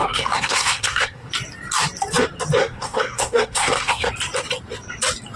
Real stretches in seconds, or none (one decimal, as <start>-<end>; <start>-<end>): 1.3-2.6; 4.1-5.4